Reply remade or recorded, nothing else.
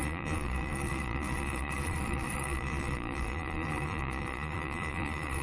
remade